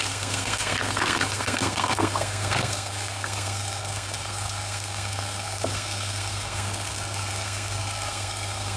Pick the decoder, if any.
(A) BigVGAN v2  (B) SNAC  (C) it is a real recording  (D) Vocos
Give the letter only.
B